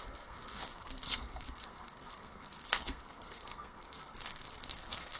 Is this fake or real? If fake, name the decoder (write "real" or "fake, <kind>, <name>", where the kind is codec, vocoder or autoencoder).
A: fake, codec, SNAC